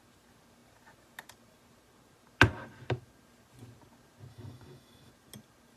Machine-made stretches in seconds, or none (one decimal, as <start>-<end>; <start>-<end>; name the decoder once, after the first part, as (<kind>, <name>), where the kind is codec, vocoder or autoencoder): 4.3-5.1 (autoencoder, DAC-VAE)